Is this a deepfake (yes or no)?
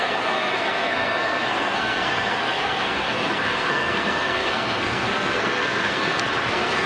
yes